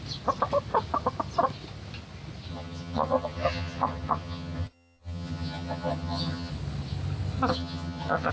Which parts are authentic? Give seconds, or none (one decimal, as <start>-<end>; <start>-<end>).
0.0-2.5; 6.5-7.5